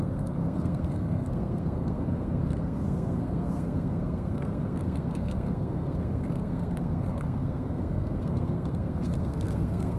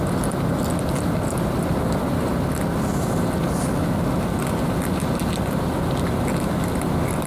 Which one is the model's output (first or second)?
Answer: first